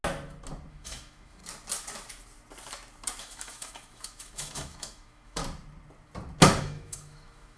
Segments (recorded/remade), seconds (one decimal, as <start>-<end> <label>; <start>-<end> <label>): 0.0-0.7 recorded; 0.7-1.4 remade; 1.4-3.2 recorded; 3.2-5.4 remade; 5.4-6.6 recorded; 6.6-7.6 remade